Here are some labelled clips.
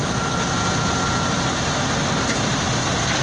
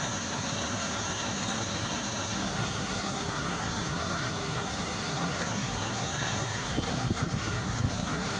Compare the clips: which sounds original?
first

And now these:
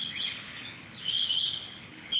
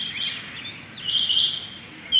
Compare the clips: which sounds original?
second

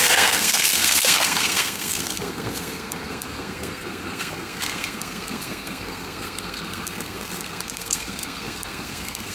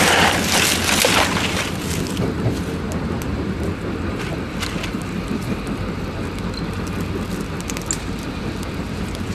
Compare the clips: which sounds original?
second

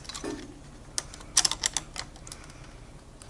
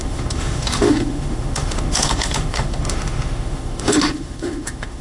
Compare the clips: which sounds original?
first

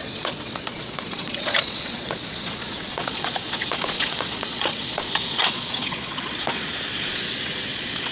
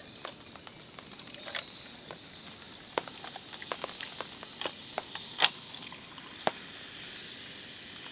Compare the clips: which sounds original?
second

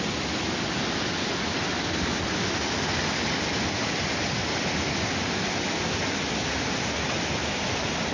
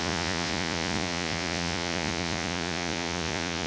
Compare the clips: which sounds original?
first